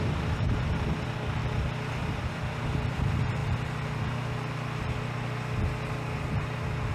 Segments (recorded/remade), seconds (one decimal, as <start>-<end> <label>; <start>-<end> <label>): 0.0-1.4 recorded; 1.4-3.0 remade; 3.0-3.4 recorded; 3.4-4.0 remade; 4.0-6.9 recorded